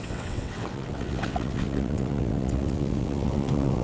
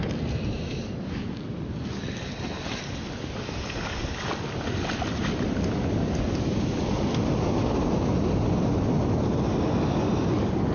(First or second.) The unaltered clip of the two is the second